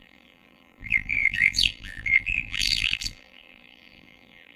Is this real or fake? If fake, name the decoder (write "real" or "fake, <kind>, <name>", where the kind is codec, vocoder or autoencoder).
fake, vocoder, BigVGAN v2